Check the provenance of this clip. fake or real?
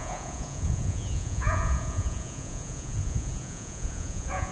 fake